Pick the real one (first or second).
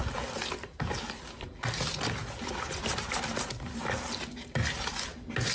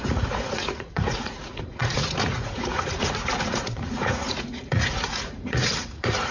first